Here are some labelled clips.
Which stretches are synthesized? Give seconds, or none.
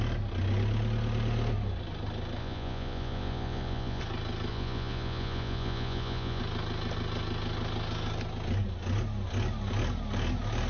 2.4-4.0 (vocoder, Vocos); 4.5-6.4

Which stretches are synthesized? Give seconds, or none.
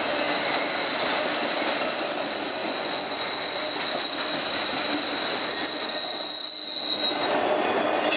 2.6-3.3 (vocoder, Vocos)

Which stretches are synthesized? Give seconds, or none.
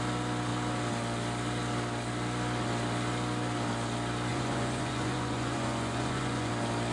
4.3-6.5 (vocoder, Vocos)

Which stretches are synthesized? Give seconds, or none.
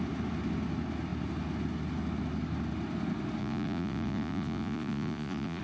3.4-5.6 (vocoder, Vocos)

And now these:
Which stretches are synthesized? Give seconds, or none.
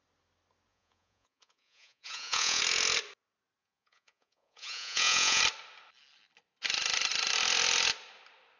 0.7-2.6 (vocoder, Vocos); 3.6-5.4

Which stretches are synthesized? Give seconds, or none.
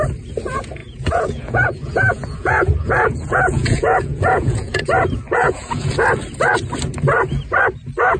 0.8-4.8 (vocoder, Vocos); 5.4-5.9